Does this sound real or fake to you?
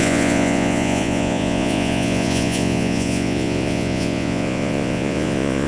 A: fake